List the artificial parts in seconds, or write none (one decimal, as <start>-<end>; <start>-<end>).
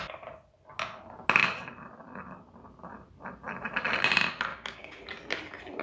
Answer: 4.5-5.0